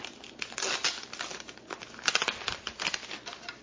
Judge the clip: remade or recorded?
recorded